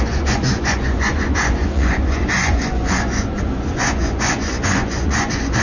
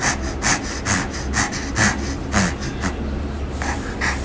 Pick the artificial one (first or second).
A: first